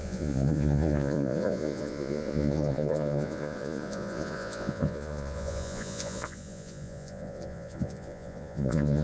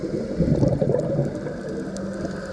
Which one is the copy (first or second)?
first